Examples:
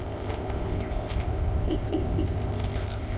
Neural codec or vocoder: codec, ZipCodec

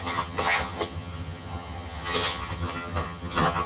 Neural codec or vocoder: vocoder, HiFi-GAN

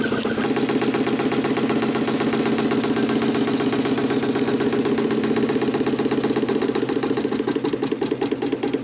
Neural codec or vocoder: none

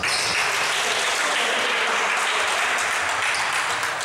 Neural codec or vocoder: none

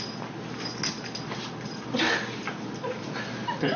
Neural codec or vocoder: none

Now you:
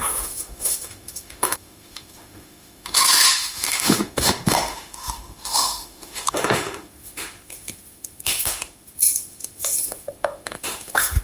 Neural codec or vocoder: autoencoder, DAC-VAE